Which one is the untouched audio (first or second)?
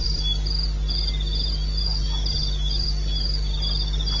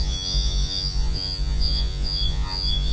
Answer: first